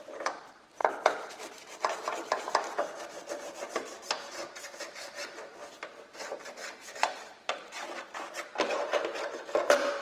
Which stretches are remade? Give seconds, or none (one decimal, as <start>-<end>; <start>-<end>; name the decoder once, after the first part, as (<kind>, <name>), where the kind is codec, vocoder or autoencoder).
0.0-5.6 (vocoder, BigVGAN v2); 6.2-10.0